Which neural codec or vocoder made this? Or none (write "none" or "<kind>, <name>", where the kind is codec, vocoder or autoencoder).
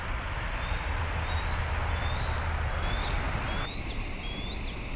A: none